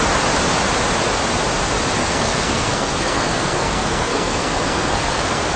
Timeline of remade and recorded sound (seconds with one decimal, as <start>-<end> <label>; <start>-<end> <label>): 0.0-2.0 recorded; 2.0-5.6 remade

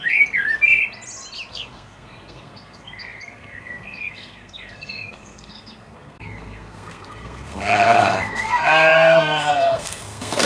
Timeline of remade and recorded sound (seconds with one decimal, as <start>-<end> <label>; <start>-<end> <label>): 0.0-0.8 remade; 0.8-1.5 recorded; 1.5-10.5 remade

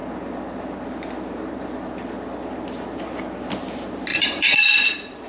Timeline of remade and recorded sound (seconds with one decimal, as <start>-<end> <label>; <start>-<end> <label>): 0.0-4.1 recorded; 4.1-5.3 remade

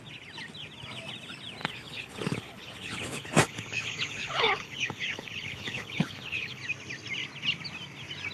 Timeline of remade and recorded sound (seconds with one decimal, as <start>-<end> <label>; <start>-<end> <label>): 0.0-1.6 recorded; 1.6-6.6 remade; 6.6-8.3 recorded

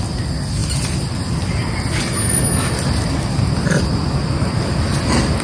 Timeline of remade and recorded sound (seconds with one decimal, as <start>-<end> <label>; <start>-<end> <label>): 0.0-5.4 recorded

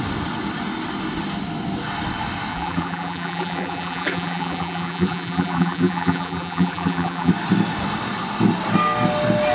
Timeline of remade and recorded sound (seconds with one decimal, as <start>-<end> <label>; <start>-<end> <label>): 0.0-2.5 recorded; 2.5-7.3 remade; 7.3-9.5 recorded

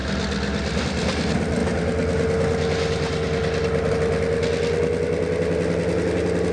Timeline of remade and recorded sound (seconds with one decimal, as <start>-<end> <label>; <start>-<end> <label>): 0.0-6.5 recorded